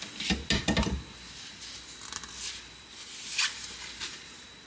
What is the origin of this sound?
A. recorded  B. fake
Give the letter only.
A